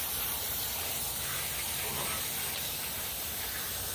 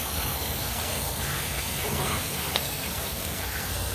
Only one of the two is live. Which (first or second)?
first